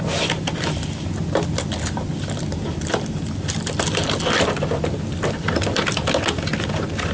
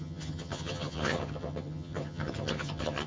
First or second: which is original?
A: first